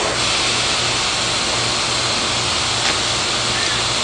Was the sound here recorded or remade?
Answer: recorded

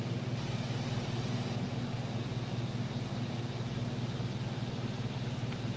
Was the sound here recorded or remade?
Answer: recorded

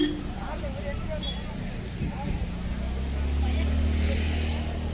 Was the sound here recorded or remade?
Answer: recorded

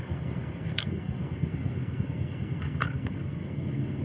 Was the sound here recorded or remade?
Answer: remade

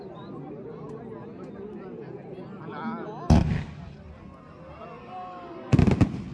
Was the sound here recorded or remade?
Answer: recorded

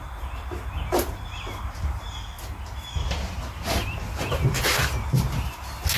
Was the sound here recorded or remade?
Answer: recorded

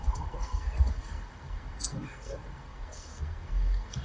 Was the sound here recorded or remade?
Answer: remade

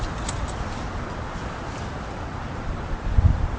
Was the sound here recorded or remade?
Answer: recorded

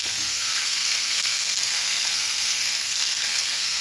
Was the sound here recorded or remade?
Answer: remade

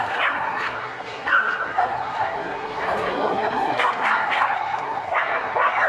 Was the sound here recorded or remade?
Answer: remade